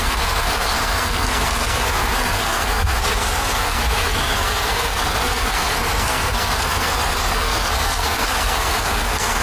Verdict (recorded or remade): remade